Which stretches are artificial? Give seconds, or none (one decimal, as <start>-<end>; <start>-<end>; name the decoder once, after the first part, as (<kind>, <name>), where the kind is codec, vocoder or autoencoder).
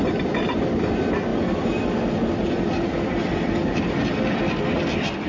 none